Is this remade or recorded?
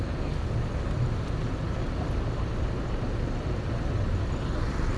recorded